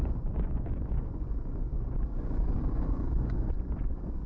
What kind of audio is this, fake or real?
fake